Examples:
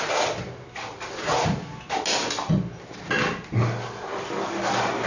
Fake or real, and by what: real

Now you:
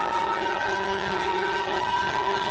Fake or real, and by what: fake, vocoder, HiFi-GAN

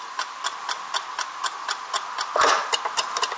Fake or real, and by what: real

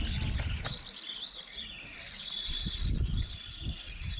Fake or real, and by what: real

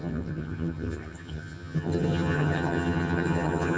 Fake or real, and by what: fake, vocoder, HiFi-GAN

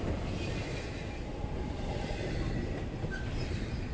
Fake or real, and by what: real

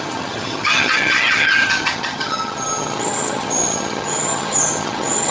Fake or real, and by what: fake, vocoder, HiFi-GAN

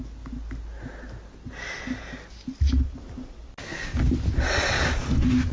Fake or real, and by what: real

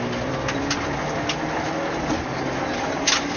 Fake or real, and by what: real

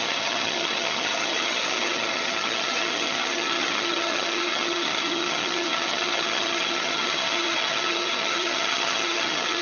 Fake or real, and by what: fake, vocoder, HiFi-GAN